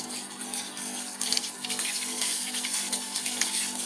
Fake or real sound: fake